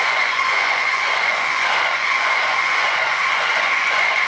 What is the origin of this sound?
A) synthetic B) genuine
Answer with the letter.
A